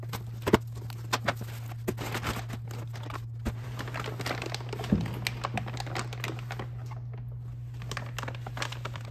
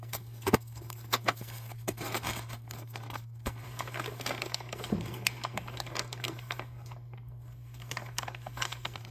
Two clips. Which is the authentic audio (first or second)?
first